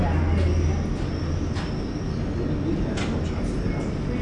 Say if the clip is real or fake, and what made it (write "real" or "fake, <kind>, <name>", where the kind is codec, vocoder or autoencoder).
real